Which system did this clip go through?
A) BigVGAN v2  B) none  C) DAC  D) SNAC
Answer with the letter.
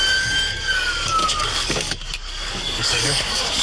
C